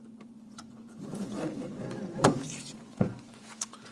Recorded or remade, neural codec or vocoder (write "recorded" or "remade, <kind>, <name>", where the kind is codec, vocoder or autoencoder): remade, vocoder, Vocos